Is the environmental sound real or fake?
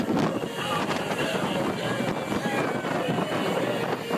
real